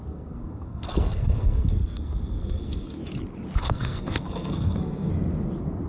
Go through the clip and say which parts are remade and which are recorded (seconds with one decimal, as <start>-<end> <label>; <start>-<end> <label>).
0.0-3.0 remade; 3.0-3.6 recorded; 3.6-5.1 remade; 5.1-5.9 recorded